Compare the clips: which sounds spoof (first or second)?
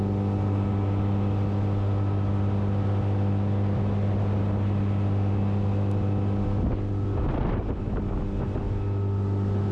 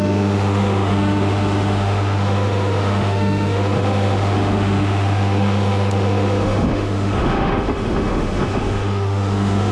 second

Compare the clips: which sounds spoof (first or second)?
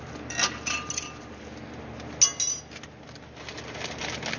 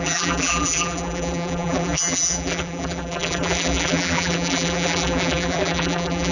second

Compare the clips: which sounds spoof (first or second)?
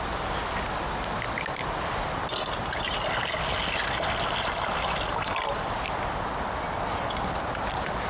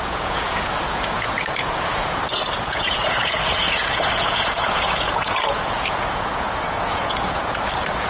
second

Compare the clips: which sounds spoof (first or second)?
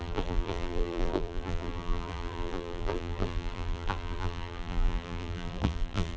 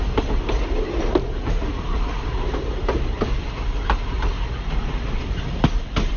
first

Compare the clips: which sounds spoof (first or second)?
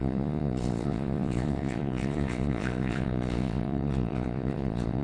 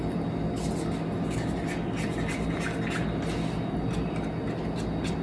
first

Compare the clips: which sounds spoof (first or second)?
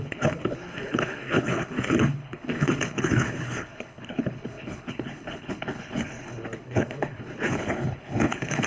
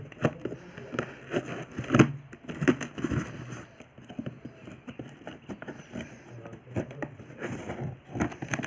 first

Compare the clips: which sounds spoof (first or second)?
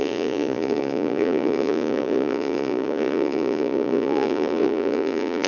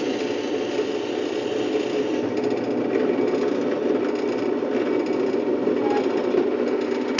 first